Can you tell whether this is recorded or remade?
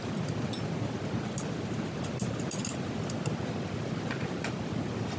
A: recorded